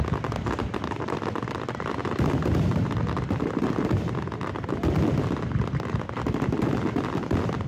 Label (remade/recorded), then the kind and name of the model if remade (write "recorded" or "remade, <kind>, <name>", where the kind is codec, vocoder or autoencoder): recorded